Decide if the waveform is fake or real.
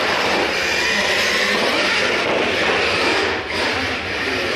real